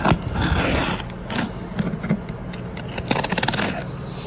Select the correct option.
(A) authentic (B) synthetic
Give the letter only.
A